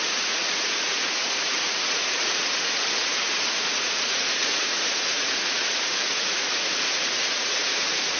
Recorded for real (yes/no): no